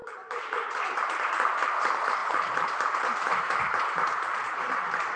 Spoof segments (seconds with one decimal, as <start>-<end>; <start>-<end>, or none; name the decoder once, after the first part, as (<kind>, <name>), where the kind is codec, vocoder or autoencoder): 0.0-1.3 (vocoder, BigVGAN v2); 2.2-5.2